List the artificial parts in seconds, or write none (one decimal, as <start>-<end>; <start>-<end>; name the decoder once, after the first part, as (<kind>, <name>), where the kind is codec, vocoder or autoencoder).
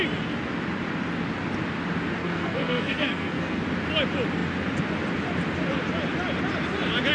2.2-3.6 (codec, SNAC)